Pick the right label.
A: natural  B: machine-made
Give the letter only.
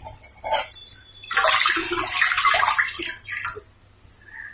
A